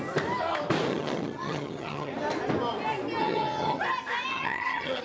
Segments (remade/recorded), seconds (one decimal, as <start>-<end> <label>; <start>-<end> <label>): 0.0-0.9 recorded; 0.9-2.1 remade; 2.1-3.2 recorded; 3.2-3.8 remade; 3.8-4.3 recorded; 4.3-5.0 remade